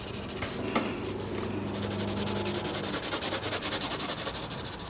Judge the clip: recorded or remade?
recorded